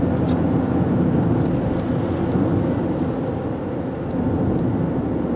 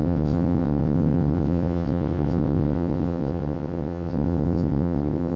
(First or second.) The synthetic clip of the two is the second